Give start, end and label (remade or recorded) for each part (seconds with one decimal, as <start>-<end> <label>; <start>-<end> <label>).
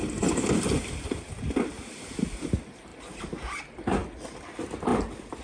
0.0-5.4 recorded